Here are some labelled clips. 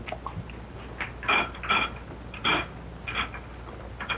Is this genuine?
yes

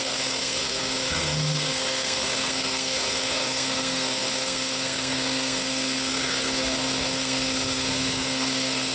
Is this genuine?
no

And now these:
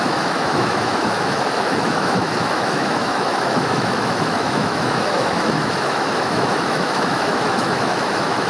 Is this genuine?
no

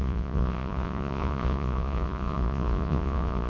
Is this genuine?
no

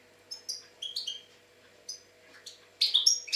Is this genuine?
yes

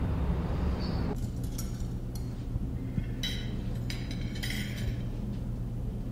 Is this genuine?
yes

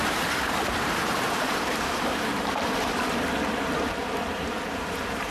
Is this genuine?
no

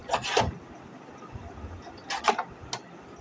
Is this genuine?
yes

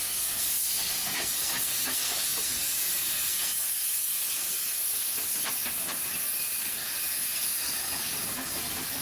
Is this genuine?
no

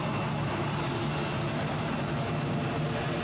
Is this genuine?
yes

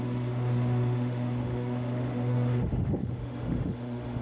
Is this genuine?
no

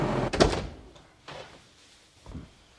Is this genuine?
yes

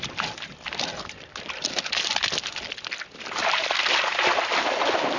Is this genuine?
yes